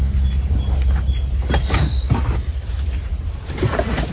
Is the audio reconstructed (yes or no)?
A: no